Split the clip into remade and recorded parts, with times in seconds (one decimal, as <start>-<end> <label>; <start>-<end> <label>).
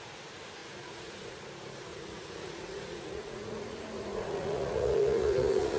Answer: 0.0-0.6 recorded; 0.6-1.4 remade; 1.4-1.9 recorded; 1.9-5.8 remade